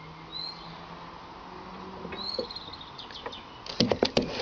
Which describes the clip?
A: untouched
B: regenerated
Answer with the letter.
A